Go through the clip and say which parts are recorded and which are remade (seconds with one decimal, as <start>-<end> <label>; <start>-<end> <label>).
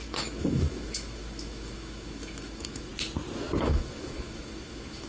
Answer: 0.0-2.9 remade; 2.9-3.6 recorded; 3.6-5.1 remade